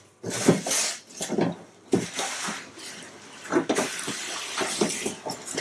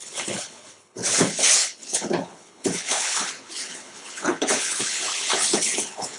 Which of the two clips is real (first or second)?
first